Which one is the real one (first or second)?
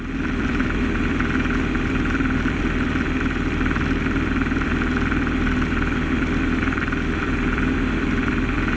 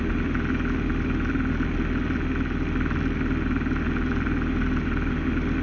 second